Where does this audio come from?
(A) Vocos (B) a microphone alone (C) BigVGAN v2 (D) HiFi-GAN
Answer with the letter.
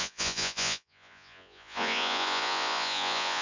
A